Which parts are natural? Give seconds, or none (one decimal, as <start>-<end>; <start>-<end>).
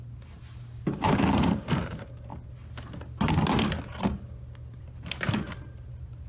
2.3-4.8